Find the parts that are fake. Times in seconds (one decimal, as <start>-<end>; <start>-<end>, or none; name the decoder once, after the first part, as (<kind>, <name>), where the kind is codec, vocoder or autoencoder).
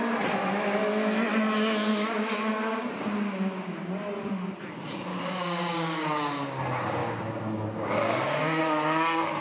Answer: 1.9-3.9 (codec, DAC); 5.1-6.6; 7.0-8.6